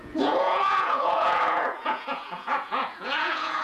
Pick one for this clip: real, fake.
fake